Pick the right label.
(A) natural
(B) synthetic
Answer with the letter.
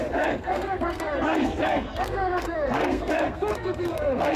B